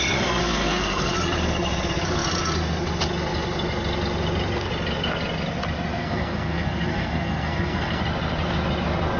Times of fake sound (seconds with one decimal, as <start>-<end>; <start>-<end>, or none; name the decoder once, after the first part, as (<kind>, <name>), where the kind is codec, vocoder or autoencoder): 0.4-1.1 (codec, SNAC); 6.0-8.0